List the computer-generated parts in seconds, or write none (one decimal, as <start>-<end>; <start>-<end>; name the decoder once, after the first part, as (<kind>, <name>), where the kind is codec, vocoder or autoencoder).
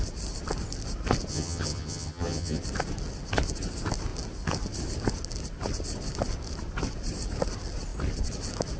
1.3-2.6 (vocoder, HiFi-GAN)